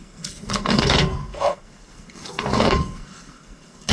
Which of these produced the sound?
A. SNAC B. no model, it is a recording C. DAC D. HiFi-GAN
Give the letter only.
A